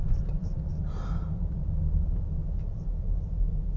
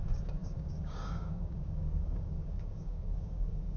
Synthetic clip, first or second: second